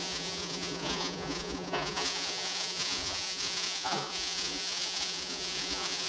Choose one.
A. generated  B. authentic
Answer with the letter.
A